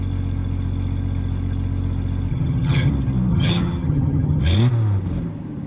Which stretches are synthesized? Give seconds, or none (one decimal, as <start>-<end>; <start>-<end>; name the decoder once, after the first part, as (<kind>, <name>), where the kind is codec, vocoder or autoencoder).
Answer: 2.3-2.9 (vocoder, HiFi-GAN); 3.3-4.4